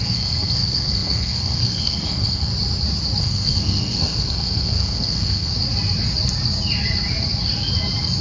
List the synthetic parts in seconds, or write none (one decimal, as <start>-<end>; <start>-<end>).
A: 0.0-2.5; 3.2-5.5